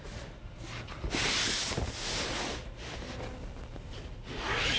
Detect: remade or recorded recorded